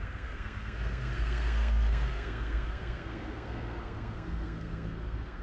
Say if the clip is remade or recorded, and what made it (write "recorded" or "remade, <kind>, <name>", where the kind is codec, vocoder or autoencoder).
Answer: remade, codec, SNAC